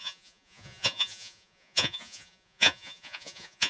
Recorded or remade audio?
remade